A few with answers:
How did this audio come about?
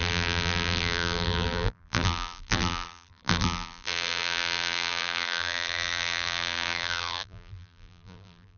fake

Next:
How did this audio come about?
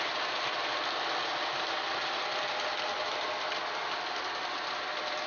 real